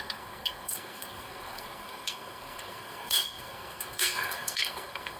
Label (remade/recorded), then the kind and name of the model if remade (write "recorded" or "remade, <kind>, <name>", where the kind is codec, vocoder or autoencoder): remade, codec, SNAC